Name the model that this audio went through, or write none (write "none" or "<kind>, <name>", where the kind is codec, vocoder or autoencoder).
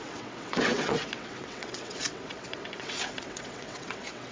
vocoder, WaveNeXt